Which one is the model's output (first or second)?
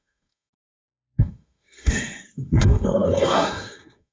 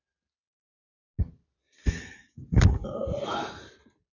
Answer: first